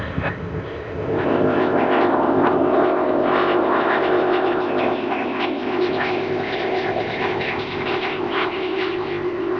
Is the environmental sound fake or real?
fake